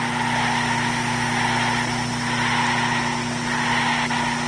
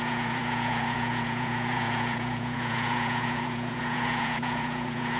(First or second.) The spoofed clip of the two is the second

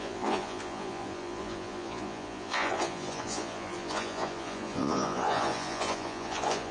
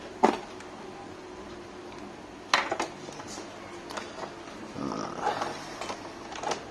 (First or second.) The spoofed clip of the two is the first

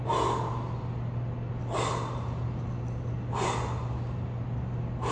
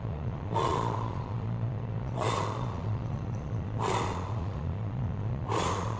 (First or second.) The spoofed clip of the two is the second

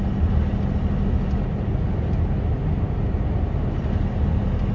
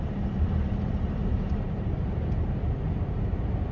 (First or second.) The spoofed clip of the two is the second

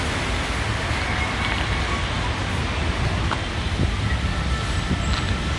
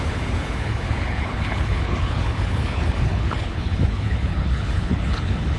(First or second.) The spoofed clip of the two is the second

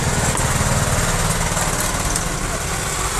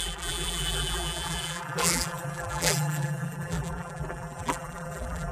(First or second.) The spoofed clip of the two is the second